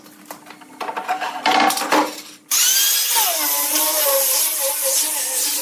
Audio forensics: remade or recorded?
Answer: recorded